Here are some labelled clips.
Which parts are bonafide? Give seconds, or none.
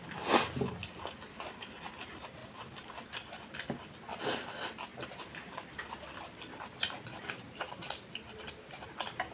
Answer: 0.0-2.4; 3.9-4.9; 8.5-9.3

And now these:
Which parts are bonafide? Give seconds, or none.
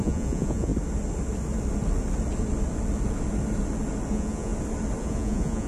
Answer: 0.7-4.1; 4.5-5.0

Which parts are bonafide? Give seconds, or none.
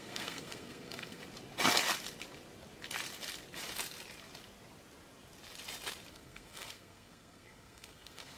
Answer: 1.2-6.1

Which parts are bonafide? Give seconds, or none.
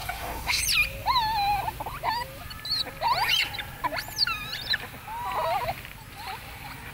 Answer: 0.6-6.9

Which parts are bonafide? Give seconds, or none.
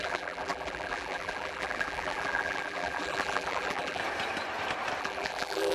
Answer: 4.0-5.0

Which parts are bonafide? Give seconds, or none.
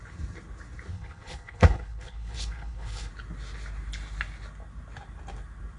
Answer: 0.0-0.9; 3.1-5.8